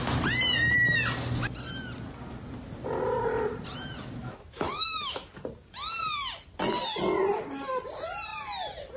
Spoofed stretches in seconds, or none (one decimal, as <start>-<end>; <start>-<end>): 4.2-5.2